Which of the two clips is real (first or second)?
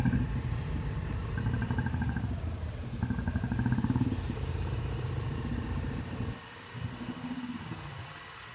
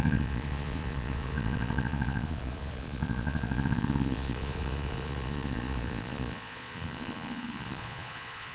first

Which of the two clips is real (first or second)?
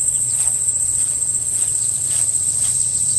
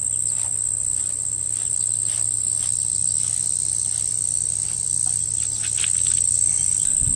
second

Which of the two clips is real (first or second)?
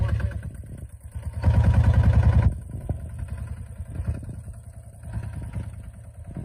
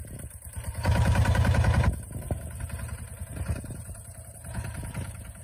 first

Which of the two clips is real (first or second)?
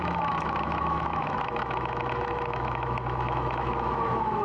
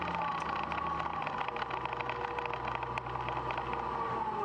second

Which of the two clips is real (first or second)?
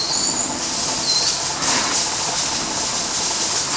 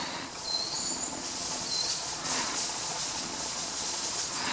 first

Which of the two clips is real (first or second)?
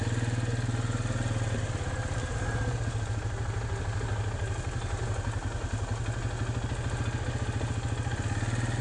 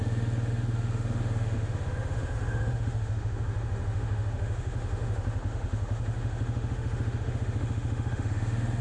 first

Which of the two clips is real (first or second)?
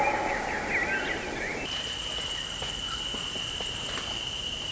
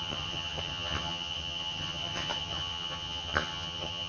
first